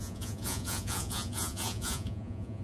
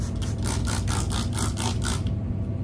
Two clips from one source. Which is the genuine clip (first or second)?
second